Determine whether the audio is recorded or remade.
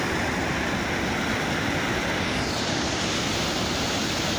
recorded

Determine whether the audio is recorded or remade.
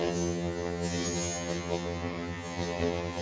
remade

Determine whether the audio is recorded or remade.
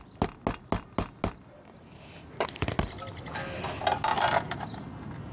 recorded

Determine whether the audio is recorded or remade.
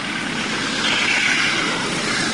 recorded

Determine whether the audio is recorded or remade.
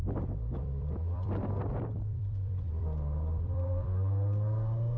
remade